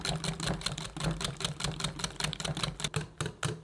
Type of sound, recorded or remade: recorded